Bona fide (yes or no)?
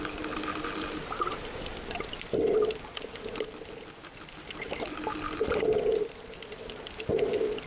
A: yes